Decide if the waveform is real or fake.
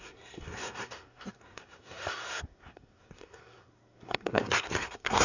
fake